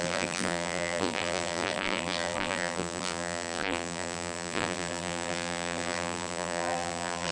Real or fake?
fake